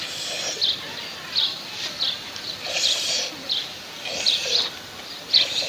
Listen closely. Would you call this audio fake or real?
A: fake